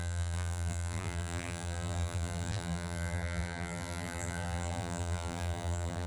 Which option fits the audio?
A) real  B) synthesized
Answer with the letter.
B